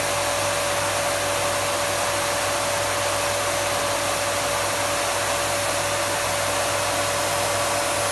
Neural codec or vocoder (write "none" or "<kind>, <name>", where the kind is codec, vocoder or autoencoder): none